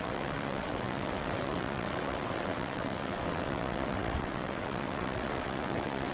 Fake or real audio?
fake